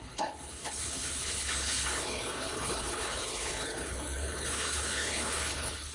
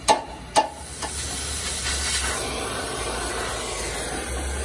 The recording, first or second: second